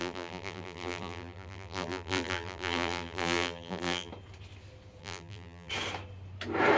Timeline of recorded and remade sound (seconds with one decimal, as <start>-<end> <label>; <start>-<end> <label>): 0.0-4.1 remade; 4.1-5.0 recorded; 5.0-5.7 remade; 5.7-6.8 recorded